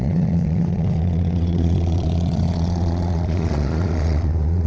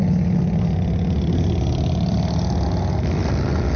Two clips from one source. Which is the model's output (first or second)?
first